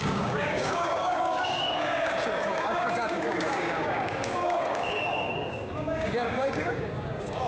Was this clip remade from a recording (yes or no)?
yes